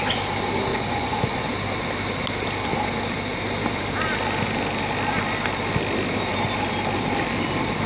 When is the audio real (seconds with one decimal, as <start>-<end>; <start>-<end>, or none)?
0.0-0.7; 1.5-7.9